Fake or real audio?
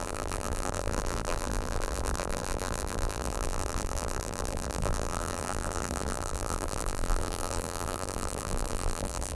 fake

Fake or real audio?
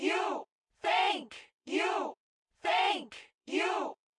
fake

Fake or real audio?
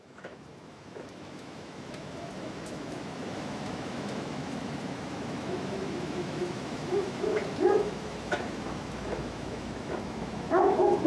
fake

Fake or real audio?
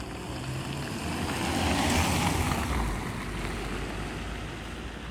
real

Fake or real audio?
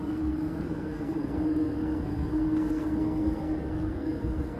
fake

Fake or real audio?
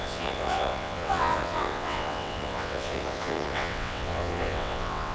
fake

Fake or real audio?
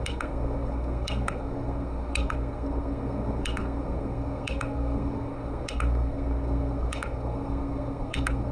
fake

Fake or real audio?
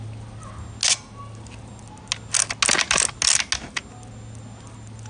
real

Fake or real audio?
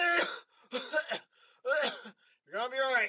real